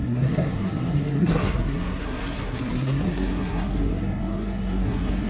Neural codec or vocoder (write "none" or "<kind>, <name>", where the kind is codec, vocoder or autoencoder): codec, SNAC